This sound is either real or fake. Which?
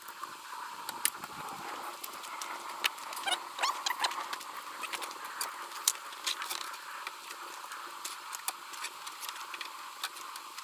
real